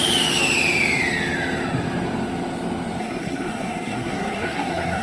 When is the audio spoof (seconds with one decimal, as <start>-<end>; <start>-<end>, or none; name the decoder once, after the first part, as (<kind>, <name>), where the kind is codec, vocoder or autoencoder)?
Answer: 3.0-5.0 (codec, SNAC)